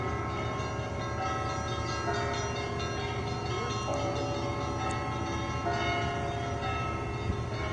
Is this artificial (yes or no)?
no